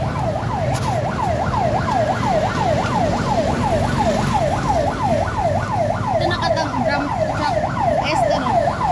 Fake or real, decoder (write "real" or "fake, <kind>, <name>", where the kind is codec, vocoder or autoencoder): real